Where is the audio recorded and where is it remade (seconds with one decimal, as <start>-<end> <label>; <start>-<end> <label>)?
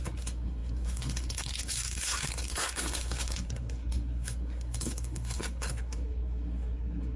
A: 0.0-7.2 remade